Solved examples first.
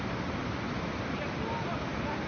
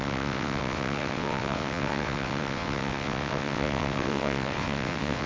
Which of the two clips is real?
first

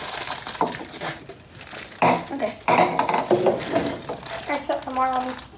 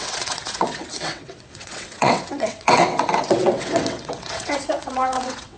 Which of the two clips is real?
first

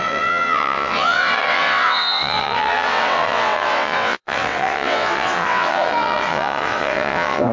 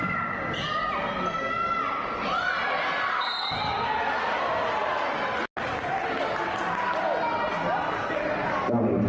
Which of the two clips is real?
second